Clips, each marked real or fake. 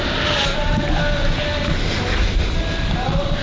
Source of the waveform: real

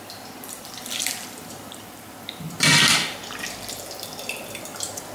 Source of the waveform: real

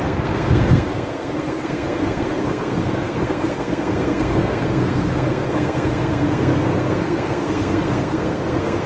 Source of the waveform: fake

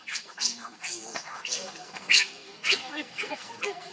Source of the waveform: fake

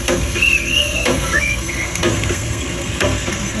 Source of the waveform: fake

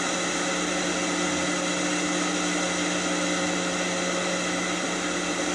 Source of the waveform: real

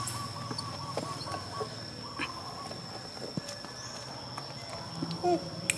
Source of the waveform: real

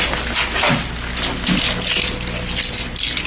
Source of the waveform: real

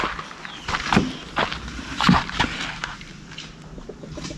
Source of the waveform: real